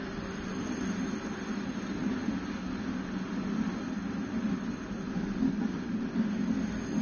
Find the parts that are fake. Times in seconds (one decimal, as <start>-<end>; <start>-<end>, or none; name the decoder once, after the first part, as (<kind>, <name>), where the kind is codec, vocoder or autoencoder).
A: none

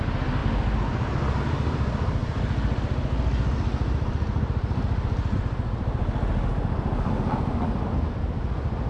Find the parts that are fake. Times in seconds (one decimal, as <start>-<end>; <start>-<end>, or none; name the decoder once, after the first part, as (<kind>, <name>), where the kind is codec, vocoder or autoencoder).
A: none